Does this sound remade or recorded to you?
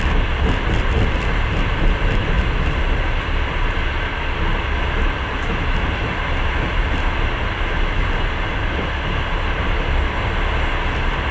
recorded